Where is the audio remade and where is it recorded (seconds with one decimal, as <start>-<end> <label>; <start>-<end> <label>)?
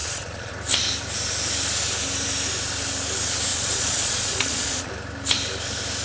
0.0-0.5 remade; 0.5-3.5 recorded; 3.5-4.9 remade; 4.9-6.0 recorded